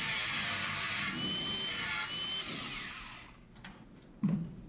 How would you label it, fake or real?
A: real